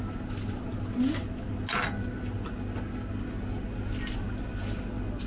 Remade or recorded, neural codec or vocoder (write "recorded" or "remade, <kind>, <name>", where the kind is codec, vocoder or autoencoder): recorded